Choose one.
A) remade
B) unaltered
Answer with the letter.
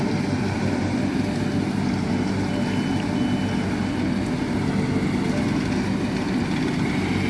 B